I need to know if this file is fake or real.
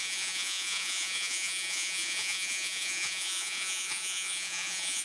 fake